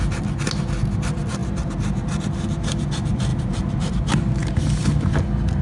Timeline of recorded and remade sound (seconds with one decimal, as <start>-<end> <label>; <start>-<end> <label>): 0.0-3.3 recorded; 3.3-3.9 remade; 3.9-5.6 recorded